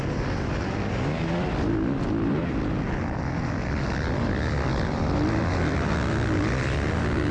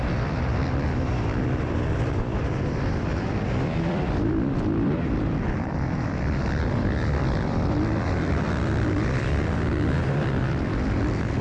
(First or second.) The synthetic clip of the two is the second